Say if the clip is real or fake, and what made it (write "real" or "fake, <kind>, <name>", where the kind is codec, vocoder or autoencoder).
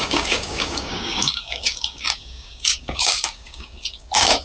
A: fake, codec, DAC